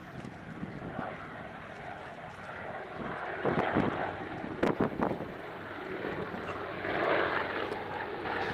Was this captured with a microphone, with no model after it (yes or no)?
yes